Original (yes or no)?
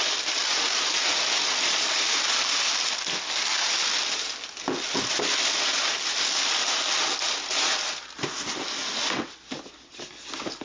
yes